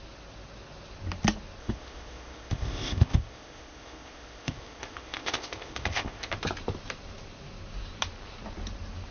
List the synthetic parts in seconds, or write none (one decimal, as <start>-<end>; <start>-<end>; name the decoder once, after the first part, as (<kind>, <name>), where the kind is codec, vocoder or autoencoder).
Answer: 1.6-6.3 (codec, ZipCodec)

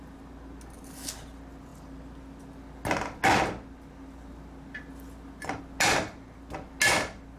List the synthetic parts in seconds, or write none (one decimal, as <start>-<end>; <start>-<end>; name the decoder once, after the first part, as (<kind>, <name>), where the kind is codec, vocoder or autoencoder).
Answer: none